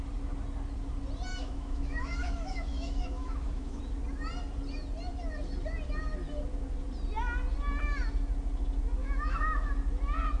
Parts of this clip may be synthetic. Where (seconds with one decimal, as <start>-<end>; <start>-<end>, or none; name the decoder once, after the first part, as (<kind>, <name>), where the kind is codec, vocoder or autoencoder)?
1.3-3.8 (autoencoder, DAC-VAE); 9.0-9.7